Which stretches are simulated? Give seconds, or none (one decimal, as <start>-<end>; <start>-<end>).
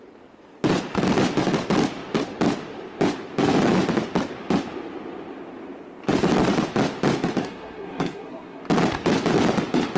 7.4-8.6